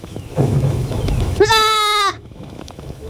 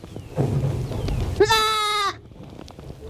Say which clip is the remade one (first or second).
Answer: first